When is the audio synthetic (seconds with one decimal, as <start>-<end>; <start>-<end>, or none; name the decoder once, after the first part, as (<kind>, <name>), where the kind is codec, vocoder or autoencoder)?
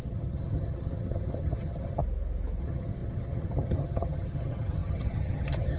0.0-2.0 (vocoder, HiFi-GAN); 2.6-5.8